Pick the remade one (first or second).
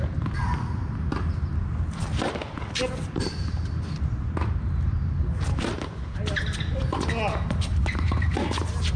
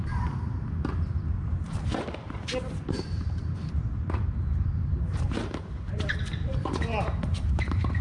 second